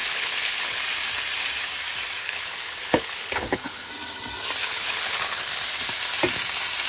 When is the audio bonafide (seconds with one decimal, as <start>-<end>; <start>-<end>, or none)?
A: 0.8-2.2; 3.9-4.6; 5.5-6.9